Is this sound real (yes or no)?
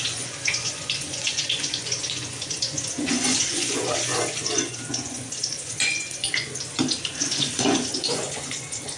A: no